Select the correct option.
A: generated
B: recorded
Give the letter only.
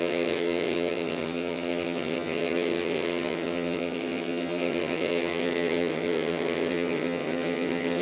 A